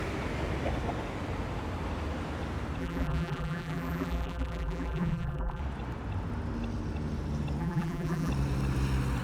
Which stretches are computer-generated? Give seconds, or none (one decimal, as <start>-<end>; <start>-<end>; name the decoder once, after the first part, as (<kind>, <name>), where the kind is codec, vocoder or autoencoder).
2.8-5.6 (vocoder, BigVGAN v2); 7.6-8.3